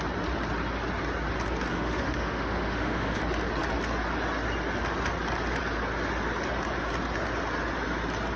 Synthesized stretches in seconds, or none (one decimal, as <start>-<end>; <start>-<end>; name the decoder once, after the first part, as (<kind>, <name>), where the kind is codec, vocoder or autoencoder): 1.7-3.2 (autoencoder, DAC-VAE)

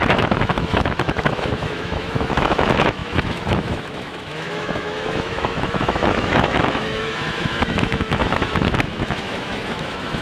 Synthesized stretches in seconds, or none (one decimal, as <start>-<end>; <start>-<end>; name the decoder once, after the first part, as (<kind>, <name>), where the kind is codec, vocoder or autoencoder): 0.0-10.2 (autoencoder, DAC-VAE)

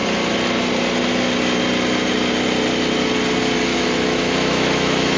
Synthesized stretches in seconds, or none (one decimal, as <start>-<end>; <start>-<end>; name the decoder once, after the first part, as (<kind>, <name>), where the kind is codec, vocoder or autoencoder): 3.7-5.2 (autoencoder, DAC-VAE)

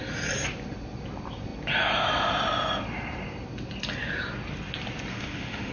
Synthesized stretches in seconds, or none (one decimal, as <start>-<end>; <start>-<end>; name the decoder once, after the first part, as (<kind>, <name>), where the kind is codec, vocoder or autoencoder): 5.1-5.7 (autoencoder, DAC-VAE)

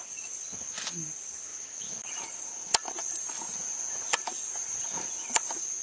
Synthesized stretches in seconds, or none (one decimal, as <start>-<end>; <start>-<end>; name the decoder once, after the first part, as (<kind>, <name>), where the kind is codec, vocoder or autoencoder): 1.5-2.1 (autoencoder, DAC-VAE)

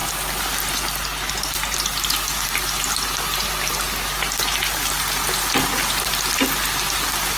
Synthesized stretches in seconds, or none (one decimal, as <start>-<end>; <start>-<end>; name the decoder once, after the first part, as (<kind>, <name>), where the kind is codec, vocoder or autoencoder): none